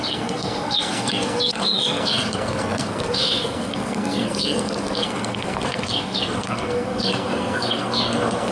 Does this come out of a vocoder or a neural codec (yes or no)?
yes